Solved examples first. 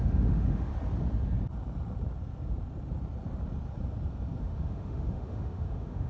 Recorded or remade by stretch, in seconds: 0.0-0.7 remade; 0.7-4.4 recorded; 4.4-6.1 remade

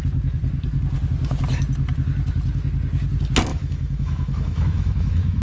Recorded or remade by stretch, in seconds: 0.0-3.5 recorded; 3.5-5.4 remade

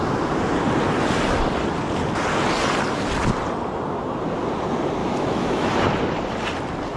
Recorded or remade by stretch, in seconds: 0.0-5.0 recorded; 5.0-5.7 remade; 5.7-7.0 recorded

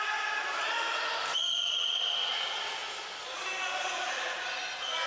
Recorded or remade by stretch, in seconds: 0.0-5.1 recorded